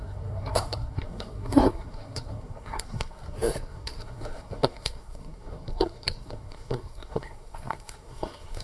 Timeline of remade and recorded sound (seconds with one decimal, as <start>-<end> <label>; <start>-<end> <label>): 0.0-8.6 remade